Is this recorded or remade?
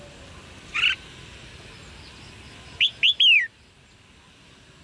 recorded